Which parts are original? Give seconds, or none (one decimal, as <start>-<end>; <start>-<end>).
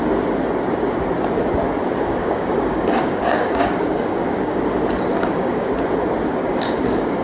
0.0-2.1; 4.6-5.2; 5.7-6.4